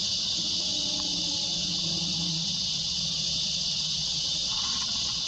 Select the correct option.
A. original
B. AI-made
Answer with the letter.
B